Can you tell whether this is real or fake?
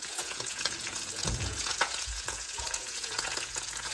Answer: fake